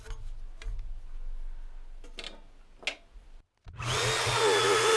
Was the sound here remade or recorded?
recorded